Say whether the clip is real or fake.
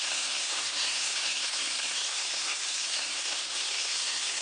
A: fake